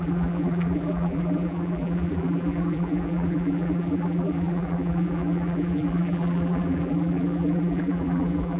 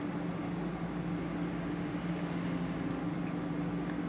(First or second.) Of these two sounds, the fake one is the first